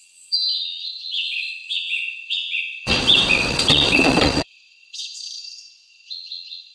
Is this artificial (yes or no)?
yes